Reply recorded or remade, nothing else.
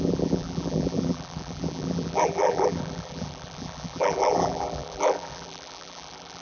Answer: remade